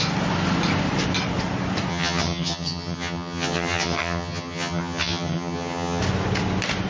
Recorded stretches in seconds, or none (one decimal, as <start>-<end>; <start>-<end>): 0.0-1.9; 6.0-6.9